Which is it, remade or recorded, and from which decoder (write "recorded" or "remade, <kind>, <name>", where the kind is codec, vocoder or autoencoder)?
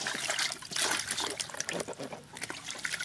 recorded